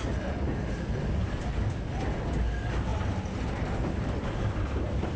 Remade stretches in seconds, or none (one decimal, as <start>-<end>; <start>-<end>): none